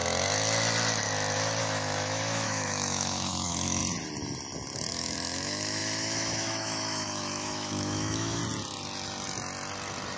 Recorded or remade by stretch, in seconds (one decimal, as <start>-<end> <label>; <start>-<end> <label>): 0.0-1.6 recorded; 1.6-3.8 remade; 3.8-4.9 recorded; 4.9-8.4 remade; 8.4-10.2 recorded